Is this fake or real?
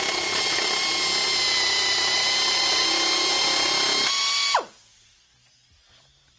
real